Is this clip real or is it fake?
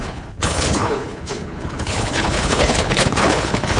fake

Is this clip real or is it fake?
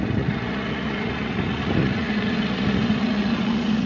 fake